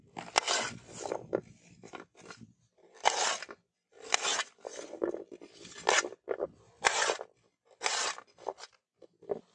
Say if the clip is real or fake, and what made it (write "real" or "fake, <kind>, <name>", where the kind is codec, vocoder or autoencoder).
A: real